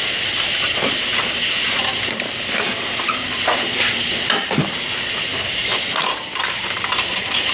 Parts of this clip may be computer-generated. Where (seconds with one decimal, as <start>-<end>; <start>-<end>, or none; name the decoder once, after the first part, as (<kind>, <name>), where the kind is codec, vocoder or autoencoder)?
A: none